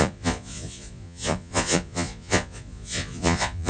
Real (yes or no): no